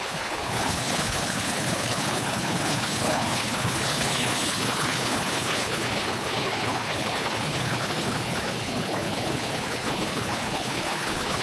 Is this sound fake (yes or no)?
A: yes